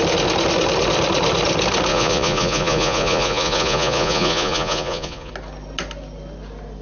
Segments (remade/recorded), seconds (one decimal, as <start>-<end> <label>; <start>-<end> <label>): 0.0-1.9 recorded; 1.9-5.3 remade; 5.3-6.8 recorded